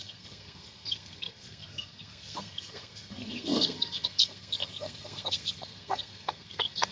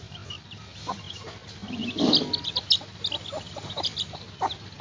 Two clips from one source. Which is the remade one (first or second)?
first